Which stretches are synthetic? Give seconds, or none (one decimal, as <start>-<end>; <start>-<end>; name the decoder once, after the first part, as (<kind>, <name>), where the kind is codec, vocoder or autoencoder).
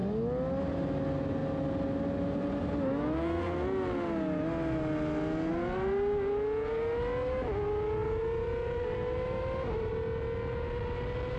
8.0-9.9 (vocoder, BigVGAN v2)